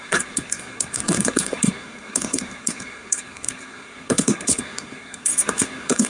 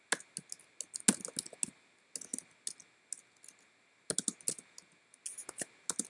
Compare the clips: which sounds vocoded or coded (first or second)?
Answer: first